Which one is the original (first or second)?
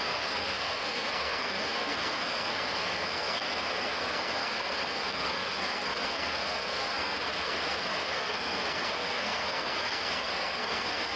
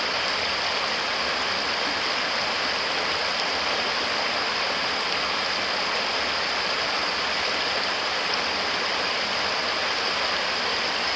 second